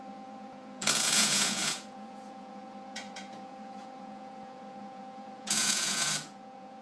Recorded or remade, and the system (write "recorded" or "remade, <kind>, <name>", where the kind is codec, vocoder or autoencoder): remade, vocoder, Vocos